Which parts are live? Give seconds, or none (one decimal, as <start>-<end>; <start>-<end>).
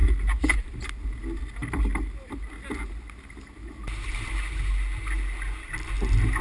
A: 0.0-6.4